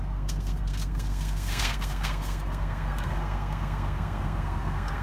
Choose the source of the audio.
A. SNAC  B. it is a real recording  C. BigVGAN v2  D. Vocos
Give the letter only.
A